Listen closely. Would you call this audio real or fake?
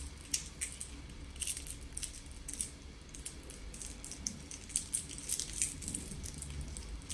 real